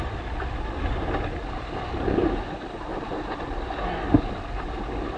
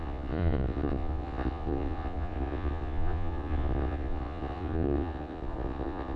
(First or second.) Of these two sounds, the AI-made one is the second